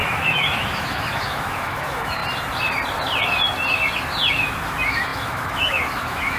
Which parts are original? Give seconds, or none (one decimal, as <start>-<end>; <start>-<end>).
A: 2.2-4.3